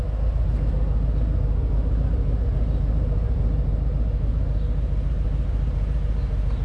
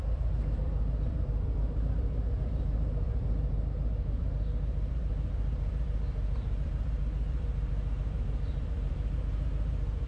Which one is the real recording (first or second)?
first